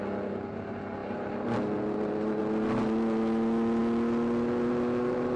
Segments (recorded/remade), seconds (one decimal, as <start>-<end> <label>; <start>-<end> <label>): 0.0-5.4 recorded